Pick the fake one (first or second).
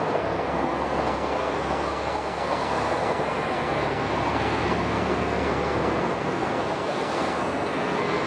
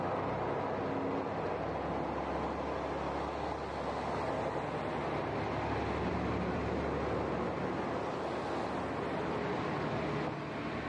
first